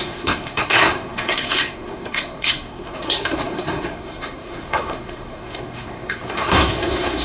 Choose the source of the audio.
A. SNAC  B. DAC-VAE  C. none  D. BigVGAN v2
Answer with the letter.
A